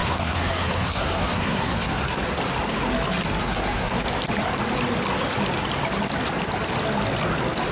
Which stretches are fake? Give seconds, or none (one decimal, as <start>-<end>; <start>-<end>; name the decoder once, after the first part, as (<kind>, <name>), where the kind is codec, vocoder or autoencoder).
0.0-2.2 (codec, SNAC); 3.4-4.0